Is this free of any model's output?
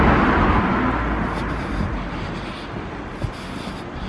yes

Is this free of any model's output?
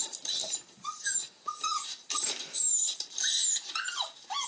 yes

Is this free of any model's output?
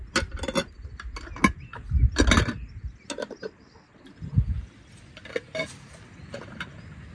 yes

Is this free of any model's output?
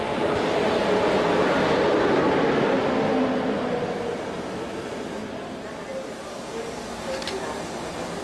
yes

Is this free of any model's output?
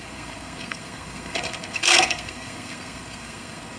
no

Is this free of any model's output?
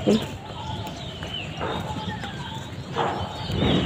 yes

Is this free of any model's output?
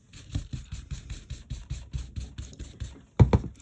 yes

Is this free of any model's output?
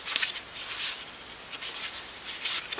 yes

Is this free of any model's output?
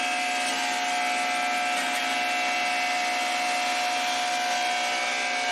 yes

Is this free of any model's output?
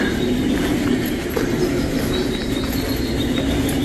yes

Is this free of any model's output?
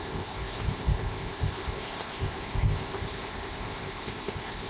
no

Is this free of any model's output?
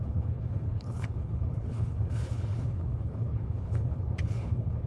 no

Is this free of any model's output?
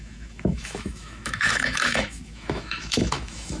no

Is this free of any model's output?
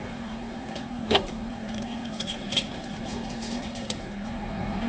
no